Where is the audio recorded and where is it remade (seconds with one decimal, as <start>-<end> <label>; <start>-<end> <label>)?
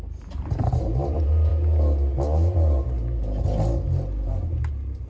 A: 0.0-1.5 remade; 1.5-4.6 recorded; 4.6-5.1 remade